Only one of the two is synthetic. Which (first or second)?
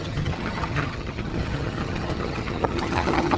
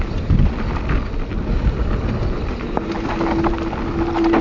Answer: first